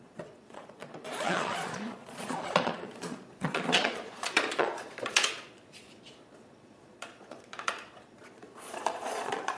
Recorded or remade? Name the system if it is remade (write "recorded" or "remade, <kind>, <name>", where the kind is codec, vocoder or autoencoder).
remade, vocoder, Vocos